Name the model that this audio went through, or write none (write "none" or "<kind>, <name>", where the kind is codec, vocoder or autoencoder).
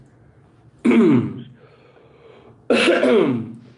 none